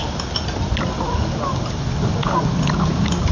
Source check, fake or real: real